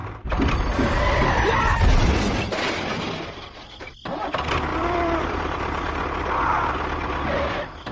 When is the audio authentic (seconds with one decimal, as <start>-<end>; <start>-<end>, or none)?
1.6-4.7; 6.0-7.9